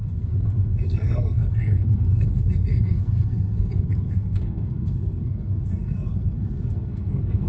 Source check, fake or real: fake